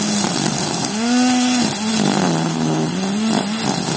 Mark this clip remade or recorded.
recorded